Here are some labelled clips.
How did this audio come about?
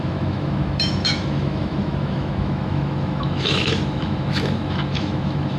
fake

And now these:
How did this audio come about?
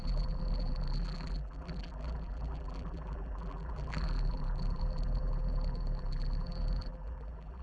fake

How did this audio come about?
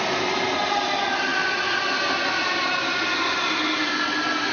real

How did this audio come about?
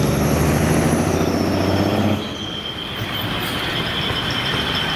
real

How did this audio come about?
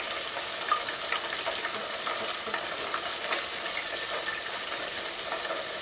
real